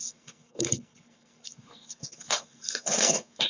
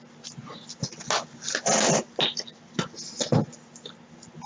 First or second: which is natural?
second